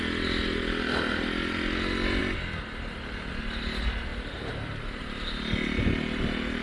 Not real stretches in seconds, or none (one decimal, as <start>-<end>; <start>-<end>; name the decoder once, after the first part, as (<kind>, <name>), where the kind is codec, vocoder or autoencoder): 4.1-5.4 (vocoder, BigVGAN v2)

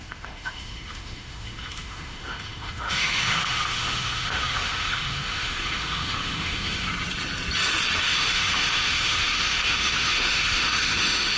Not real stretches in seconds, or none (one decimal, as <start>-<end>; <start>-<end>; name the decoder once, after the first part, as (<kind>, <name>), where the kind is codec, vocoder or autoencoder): 0.0-6.9 (autoencoder, DAC-VAE); 8.0-11.4